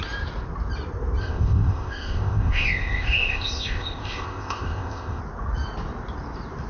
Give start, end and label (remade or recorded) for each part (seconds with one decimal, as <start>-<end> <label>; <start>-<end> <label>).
0.0-1.2 recorded; 1.2-5.2 remade; 5.2-6.7 recorded